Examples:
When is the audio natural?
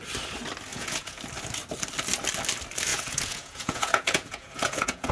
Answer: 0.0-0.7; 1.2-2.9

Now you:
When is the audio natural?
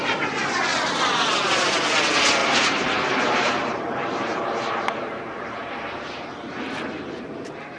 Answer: 0.0-2.4; 6.5-7.8